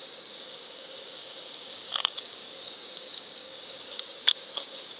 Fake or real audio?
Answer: fake